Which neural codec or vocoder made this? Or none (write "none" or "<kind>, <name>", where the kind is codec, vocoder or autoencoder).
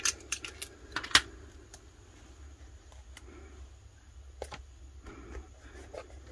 none